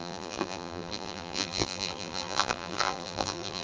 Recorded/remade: remade